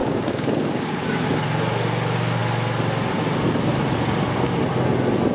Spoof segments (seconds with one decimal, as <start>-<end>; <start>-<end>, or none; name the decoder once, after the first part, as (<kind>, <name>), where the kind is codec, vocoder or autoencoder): 0.0-1.3 (codec, DAC)